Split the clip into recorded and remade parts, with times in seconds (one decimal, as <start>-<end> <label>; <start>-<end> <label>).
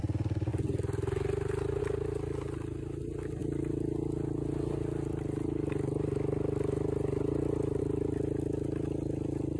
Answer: 0.0-9.6 recorded